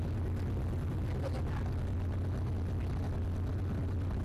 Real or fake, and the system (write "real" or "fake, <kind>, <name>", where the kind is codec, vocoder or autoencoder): real